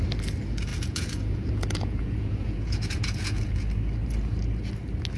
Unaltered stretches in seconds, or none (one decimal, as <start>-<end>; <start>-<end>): 0.0-0.7; 3.5-5.2